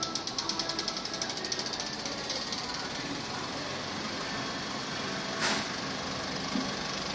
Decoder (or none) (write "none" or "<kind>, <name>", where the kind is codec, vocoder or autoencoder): none